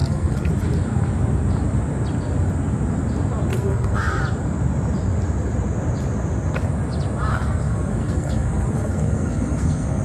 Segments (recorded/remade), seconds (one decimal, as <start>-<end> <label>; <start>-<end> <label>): 0.0-0.5 remade; 0.5-3.5 recorded; 3.5-4.2 remade; 4.2-7.3 recorded; 7.3-10.0 remade